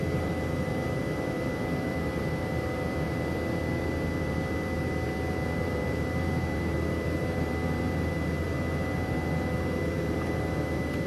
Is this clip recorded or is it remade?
remade